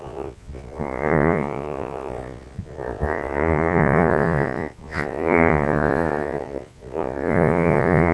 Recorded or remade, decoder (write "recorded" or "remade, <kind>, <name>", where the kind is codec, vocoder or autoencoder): remade, vocoder, Vocos